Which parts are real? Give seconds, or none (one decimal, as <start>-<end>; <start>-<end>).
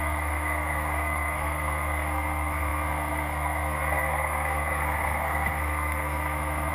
none